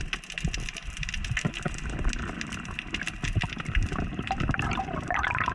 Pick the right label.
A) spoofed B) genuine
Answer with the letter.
B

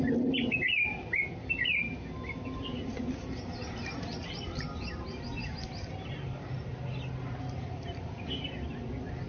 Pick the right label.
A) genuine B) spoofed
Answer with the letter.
A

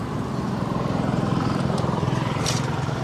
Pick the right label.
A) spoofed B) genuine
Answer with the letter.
A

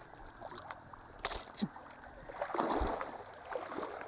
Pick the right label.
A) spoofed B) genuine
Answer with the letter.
B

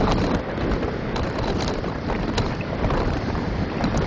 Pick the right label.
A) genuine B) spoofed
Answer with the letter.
A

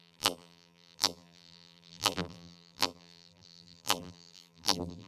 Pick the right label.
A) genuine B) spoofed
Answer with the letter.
B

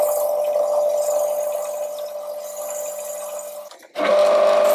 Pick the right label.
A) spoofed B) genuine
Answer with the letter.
B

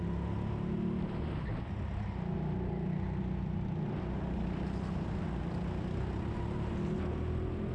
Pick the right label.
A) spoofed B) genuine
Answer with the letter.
B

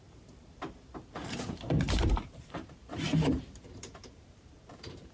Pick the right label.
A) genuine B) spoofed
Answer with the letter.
B